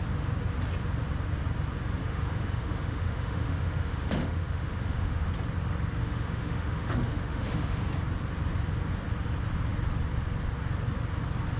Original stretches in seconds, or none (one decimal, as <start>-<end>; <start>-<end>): 0.0-2.0; 5.3-6.0; 7.9-11.6